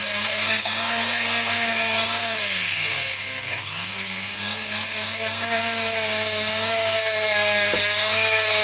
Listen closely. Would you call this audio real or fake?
fake